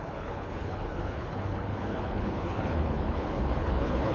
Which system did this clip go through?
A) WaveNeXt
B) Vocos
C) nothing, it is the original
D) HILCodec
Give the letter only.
D